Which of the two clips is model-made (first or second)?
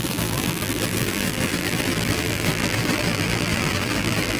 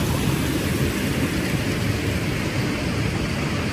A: first